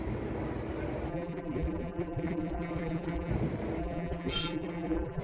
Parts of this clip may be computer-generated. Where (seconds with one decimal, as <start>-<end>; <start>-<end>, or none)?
1.1-3.3; 3.8-5.2